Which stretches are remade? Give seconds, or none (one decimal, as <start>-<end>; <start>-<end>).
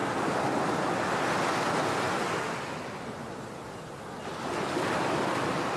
0.0-1.2